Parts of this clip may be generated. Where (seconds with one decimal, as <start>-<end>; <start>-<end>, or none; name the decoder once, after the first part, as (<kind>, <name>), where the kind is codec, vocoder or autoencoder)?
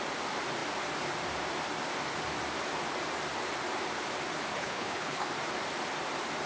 4.5-5.3 (codec, HILCodec)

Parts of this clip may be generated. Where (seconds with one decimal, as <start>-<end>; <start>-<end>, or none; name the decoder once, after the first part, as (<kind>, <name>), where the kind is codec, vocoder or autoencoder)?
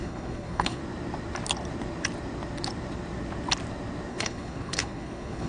0.0-0.8 (codec, HILCodec); 4.1-5.5